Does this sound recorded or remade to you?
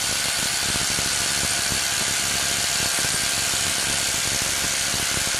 recorded